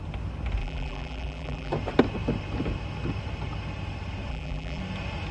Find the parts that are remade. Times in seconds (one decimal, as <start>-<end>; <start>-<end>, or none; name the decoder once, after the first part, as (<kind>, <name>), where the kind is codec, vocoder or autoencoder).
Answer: 0.6-1.7 (vocoder, BigVGAN v2); 4.3-4.8